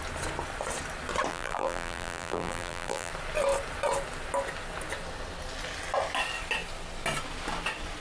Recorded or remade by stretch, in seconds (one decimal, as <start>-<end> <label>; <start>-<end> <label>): 0.0-1.3 recorded; 1.3-3.1 remade; 3.1-8.0 recorded